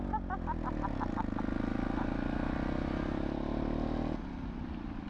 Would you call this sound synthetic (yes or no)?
no